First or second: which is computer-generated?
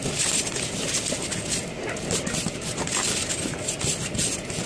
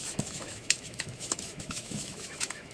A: second